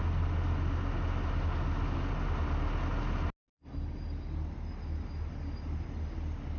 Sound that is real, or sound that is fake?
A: real